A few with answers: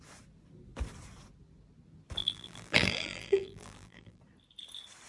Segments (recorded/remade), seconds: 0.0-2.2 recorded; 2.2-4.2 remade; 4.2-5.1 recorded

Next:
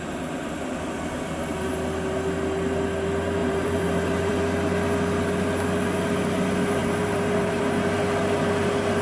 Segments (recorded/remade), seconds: 0.0-3.4 recorded; 3.4-4.4 remade; 4.4-6.8 recorded; 6.8-7.6 remade; 7.6-9.0 recorded

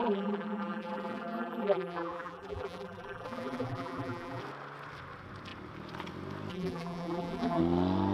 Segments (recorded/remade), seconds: 0.0-4.4 remade; 4.4-6.5 recorded; 6.5-7.6 remade; 7.6-8.1 recorded